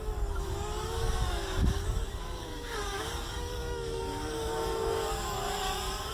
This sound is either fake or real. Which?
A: fake